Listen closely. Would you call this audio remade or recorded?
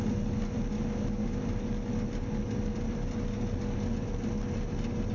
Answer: recorded